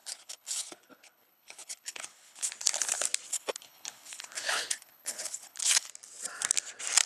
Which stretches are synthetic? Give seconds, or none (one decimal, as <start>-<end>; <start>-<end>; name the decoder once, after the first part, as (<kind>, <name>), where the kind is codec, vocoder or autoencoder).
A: 0.0-2.5 (codec, HILCodec); 3.3-5.9